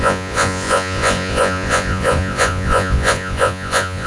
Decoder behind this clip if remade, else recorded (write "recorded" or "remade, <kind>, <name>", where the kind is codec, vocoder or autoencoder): remade, vocoder, Vocos